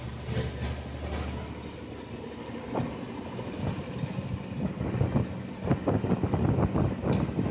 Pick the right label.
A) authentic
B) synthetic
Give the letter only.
A